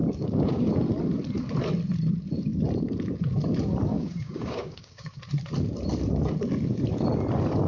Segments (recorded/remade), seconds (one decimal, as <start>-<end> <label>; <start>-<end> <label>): 0.0-0.7 remade; 0.7-3.9 recorded; 3.9-5.2 remade; 5.2-7.7 recorded